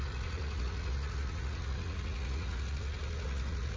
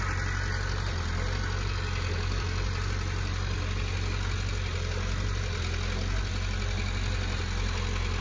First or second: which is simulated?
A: first